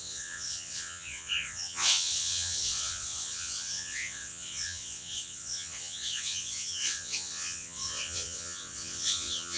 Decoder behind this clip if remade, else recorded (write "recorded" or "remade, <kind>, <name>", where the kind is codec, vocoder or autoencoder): remade, vocoder, WaveNeXt